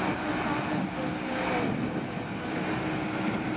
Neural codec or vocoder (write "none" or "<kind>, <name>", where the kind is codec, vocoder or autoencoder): none